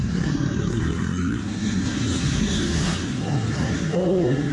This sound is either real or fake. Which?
fake